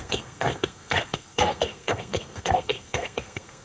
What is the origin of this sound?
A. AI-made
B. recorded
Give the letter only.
A